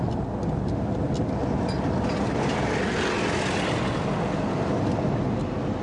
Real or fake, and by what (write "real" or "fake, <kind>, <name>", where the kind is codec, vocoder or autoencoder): real